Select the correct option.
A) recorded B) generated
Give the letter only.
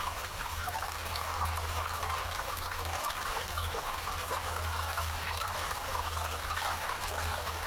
B